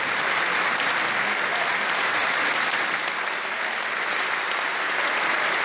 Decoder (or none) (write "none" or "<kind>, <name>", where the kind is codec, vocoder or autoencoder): none